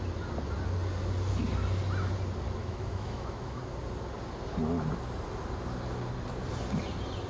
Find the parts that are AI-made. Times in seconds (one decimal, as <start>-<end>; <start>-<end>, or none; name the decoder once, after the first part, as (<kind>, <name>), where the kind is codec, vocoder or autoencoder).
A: 2.6-3.6 (autoencoder, DAC-VAE)